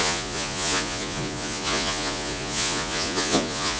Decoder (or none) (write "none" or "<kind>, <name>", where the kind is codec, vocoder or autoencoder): vocoder, Vocos